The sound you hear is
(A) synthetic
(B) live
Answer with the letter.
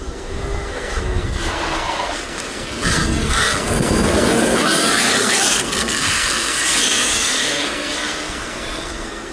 A